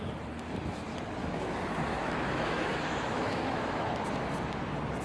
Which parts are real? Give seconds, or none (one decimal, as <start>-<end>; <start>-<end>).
0.0-1.2; 3.9-5.0